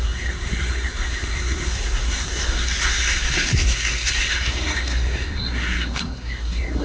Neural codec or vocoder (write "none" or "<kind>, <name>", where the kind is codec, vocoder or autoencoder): codec, SNAC